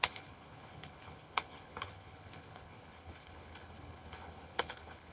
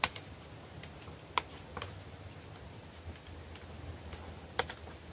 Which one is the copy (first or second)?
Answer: first